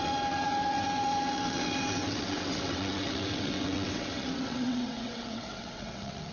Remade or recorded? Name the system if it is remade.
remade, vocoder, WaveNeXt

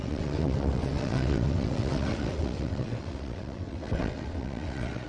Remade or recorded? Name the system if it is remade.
remade, vocoder, WaveNeXt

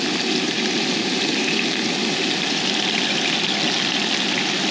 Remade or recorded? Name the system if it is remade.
recorded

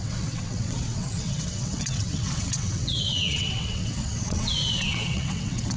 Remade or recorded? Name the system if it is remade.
remade, vocoder, WaveNeXt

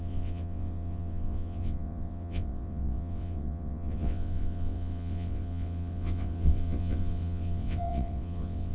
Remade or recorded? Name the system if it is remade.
remade, vocoder, WaveNeXt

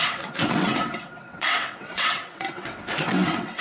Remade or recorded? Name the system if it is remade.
remade, vocoder, WaveNeXt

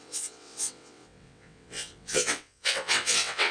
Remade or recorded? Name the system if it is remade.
remade, vocoder, WaveNeXt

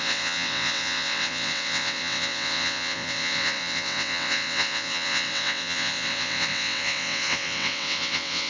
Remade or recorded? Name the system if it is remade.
remade, vocoder, WaveNeXt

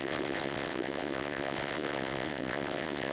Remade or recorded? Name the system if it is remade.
remade, vocoder, WaveNeXt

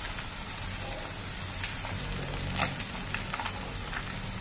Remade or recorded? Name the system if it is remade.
recorded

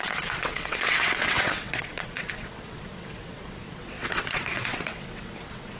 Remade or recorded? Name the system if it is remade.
remade, vocoder, WaveNeXt